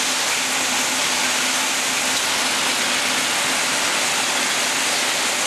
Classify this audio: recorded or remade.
recorded